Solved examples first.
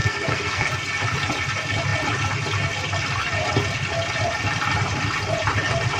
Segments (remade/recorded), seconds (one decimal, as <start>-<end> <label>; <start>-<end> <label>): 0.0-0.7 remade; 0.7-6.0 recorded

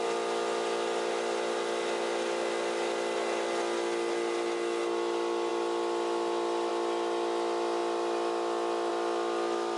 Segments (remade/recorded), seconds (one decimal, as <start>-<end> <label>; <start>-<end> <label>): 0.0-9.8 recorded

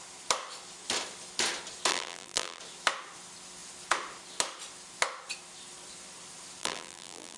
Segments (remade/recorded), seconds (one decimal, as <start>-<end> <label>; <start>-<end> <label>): 0.0-1.9 recorded; 1.9-2.6 remade; 2.6-6.6 recorded; 6.6-7.4 remade